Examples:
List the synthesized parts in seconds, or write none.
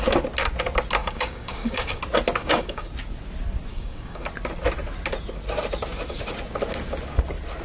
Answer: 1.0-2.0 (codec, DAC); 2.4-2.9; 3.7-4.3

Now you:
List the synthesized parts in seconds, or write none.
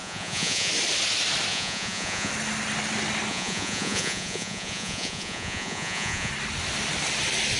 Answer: 0.0-0.7 (vocoder, Vocos); 1.5-2.3; 3.3-6.3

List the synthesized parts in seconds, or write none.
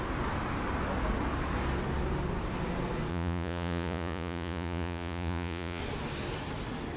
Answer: 3.1-5.8 (vocoder, Vocos)